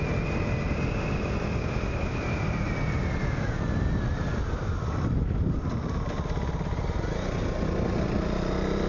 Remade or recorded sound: recorded